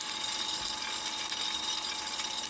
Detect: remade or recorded recorded